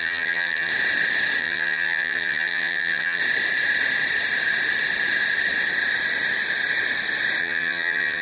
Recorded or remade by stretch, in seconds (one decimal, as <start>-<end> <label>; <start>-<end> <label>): 0.0-0.7 remade; 0.7-1.4 recorded; 1.4-3.2 remade; 3.2-7.4 recorded; 7.4-8.2 remade